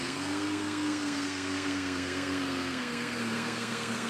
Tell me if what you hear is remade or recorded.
remade